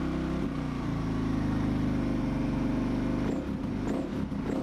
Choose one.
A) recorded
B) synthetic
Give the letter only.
A